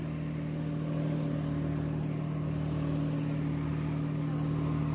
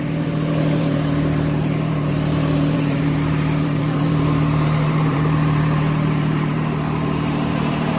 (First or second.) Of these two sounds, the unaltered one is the first